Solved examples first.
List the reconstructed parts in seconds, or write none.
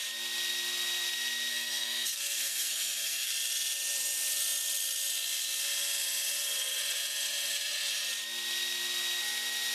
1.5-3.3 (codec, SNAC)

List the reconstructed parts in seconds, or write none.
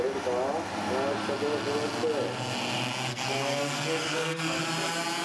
3.1-4.6 (codec, SNAC)